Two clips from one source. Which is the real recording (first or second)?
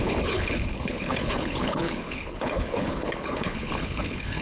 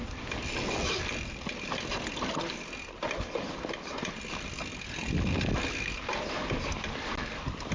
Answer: second